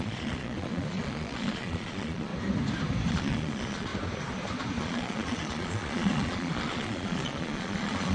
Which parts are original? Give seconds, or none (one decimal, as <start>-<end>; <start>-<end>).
2.3-3.1; 3.9-4.8